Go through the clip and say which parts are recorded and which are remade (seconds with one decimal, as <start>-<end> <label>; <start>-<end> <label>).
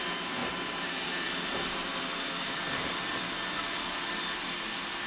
0.0-5.1 recorded